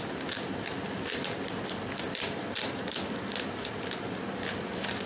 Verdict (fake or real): real